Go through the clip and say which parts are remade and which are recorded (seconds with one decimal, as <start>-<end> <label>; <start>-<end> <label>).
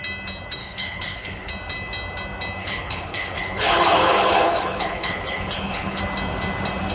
0.0-0.6 recorded; 0.6-1.5 remade; 1.5-2.6 recorded; 2.6-6.0 remade; 6.0-6.9 recorded